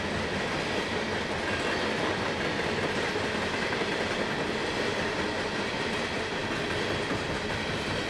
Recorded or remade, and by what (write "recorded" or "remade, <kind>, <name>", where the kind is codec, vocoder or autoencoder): recorded